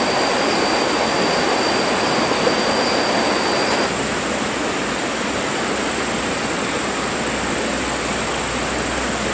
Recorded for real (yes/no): yes